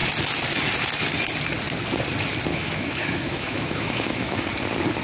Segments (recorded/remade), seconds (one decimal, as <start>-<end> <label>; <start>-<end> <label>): 0.0-2.5 recorded; 2.5-4.5 remade; 4.5-5.0 recorded